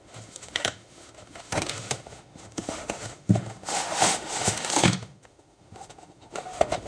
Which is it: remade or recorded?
remade